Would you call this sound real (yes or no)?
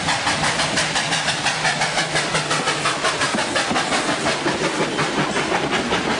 yes